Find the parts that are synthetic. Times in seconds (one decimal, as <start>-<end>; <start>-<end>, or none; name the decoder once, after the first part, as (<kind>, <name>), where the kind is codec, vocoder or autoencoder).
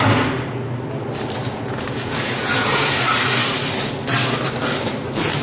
1.5-3.0 (vocoder, Vocos)